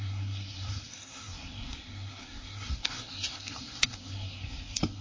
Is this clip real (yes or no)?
no